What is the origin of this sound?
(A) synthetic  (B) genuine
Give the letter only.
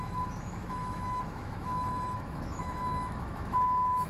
A